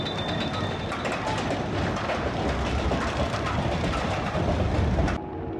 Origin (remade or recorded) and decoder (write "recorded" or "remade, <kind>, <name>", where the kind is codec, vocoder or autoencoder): recorded